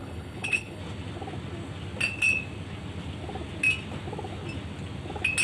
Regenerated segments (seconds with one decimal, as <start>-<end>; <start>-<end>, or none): 0.0-0.8